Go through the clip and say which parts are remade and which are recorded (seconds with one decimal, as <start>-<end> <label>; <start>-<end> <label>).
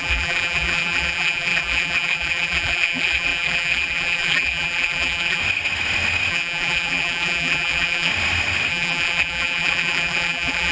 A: 0.0-5.4 remade; 5.4-6.3 recorded; 6.3-8.1 remade; 8.1-8.7 recorded; 8.7-10.7 remade